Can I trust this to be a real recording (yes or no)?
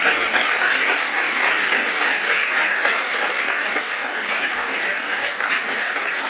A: no